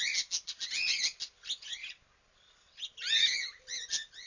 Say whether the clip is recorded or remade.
recorded